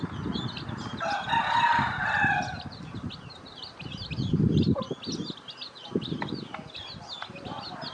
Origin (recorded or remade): recorded